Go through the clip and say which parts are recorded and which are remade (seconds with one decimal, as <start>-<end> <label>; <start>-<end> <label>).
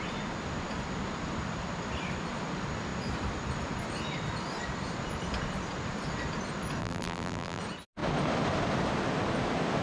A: 0.0-6.8 recorded; 6.8-7.6 remade; 7.6-9.8 recorded